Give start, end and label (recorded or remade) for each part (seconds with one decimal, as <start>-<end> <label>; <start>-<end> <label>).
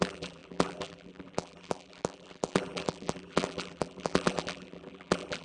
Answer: 0.0-5.4 remade